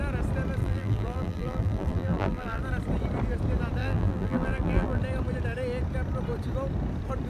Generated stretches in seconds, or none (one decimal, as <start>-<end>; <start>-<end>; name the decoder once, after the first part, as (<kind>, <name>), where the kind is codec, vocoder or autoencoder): 0.6-2.6 (vocoder, BigVGAN v2); 3.8-5.0